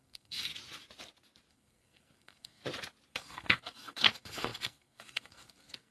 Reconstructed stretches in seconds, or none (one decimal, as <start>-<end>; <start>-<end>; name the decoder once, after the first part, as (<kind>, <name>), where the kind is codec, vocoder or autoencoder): 0.0-0.5 (codec, SNAC); 1.5-2.6; 3.1-5.9